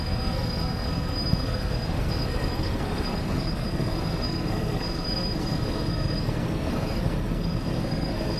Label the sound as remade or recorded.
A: remade